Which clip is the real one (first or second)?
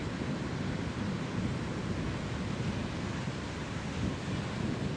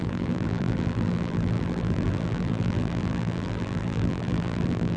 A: first